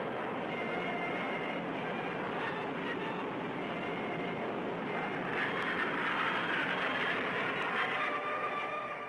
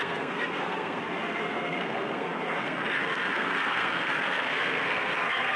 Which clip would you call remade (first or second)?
second